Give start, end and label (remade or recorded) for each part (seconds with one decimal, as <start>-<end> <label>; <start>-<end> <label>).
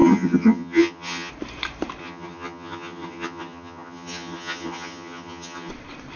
0.0-1.3 remade; 1.3-2.0 recorded; 2.0-5.7 remade; 5.7-6.2 recorded